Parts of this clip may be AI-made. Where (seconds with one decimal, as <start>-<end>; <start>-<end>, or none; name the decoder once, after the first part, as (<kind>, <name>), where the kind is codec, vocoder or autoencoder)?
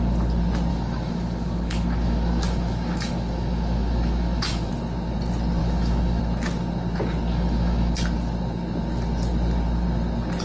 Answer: 0.7-4.7 (autoencoder, DAC-VAE); 5.6-6.2; 7.3-7.9